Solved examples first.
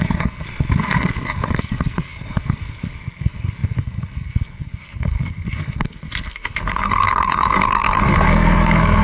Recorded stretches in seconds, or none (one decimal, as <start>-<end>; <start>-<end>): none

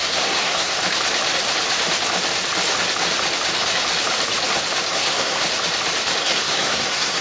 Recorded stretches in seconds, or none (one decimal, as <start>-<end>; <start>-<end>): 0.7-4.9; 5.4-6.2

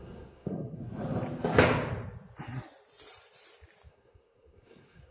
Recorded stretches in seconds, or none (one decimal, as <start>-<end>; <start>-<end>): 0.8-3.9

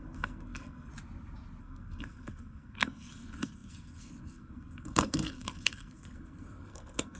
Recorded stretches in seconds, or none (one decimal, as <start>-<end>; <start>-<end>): 0.9-1.6